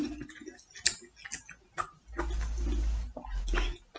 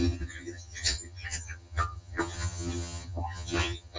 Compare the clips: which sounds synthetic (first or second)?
second